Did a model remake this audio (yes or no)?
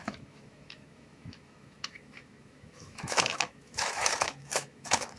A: yes